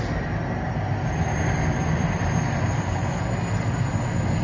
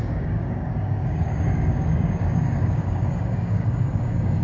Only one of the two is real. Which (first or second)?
first